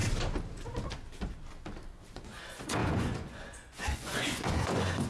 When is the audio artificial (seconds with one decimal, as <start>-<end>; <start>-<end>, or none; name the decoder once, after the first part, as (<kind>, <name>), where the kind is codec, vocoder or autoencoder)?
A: 2.1-5.1 (vocoder, Vocos)

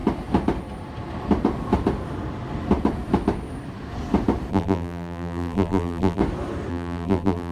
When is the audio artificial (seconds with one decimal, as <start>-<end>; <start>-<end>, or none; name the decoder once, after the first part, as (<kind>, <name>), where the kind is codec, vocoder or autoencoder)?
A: 4.5-6.2 (vocoder, BigVGAN v2); 6.7-7.5